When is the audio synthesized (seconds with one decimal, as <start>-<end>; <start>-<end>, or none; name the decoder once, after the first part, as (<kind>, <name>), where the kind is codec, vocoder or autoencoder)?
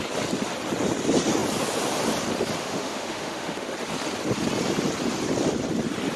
2.6-3.7 (autoencoder, DAC-VAE)